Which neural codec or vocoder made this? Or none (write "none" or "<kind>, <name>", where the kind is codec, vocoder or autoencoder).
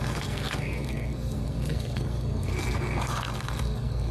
codec, SNAC